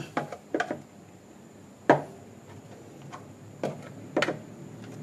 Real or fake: real